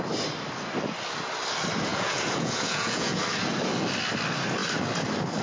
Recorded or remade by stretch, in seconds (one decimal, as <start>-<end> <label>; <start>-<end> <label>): 0.0-1.9 recorded; 1.9-3.2 remade; 3.2-5.4 recorded